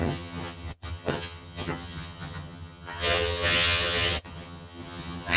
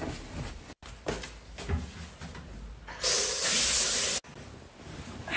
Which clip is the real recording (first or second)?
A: second